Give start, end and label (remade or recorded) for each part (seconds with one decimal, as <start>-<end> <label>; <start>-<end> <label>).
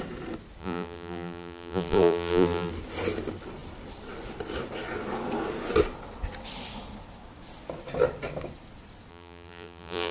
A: 0.0-0.6 recorded; 0.6-2.7 remade; 2.7-9.1 recorded; 9.1-10.1 remade